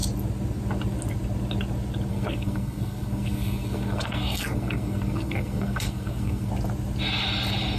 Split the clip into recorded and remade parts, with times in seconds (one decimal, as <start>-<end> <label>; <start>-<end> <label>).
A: 0.0-2.1 recorded; 2.1-6.5 remade; 6.5-7.8 recorded